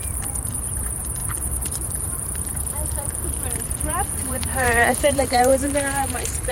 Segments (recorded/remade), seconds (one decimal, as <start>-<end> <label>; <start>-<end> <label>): 0.0-6.5 remade